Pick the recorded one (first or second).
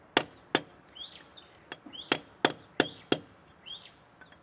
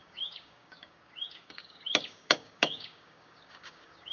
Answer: first